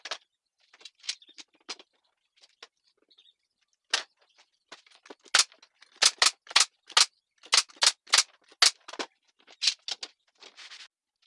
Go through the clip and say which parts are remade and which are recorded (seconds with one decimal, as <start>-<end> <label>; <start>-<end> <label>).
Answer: 0.0-11.3 recorded